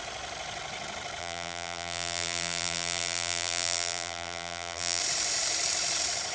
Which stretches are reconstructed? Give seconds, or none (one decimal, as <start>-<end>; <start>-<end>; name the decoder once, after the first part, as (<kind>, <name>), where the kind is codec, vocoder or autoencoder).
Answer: 1.2-5.0 (vocoder, BigVGAN v2)